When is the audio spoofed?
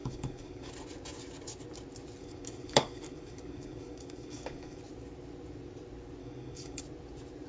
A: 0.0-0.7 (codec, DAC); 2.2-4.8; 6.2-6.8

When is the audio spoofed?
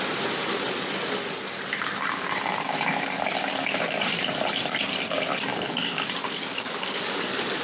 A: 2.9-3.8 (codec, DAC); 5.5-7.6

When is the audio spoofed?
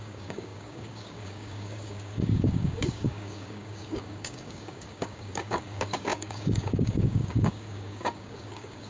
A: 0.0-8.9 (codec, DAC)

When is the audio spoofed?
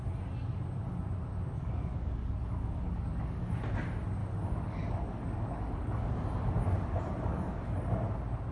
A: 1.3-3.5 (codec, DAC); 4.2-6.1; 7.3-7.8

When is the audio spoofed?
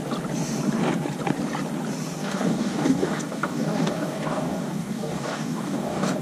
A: 2.2-6.2 (codec, DAC)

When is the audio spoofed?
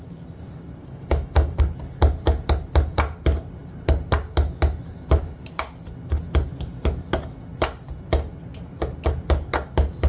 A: 0.8-1.6 (codec, DAC)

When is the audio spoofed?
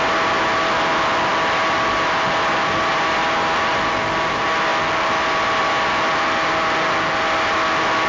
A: none